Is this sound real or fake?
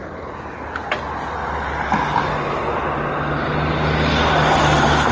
real